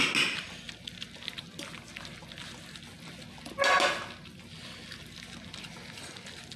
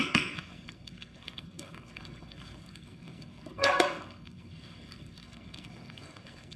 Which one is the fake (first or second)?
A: second